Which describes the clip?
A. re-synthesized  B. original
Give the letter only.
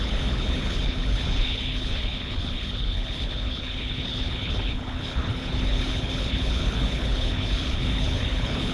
A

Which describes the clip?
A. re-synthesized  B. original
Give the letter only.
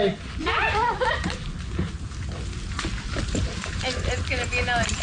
B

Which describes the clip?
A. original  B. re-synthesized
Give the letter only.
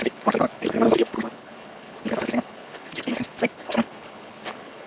B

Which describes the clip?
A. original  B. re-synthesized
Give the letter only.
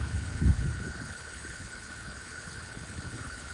B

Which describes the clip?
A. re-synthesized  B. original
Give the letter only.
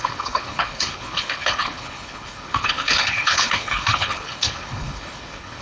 A